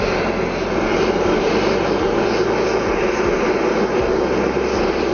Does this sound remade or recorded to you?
recorded